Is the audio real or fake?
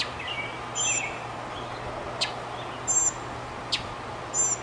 real